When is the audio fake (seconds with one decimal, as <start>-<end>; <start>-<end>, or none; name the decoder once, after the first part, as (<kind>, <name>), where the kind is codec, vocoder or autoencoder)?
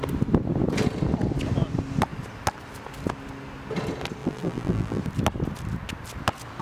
4.2-5.0 (vocoder, BigVGAN v2)